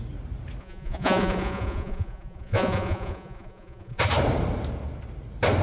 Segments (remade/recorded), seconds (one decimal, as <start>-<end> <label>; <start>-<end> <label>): 0.0-0.6 recorded; 0.6-4.0 remade; 4.0-5.6 recorded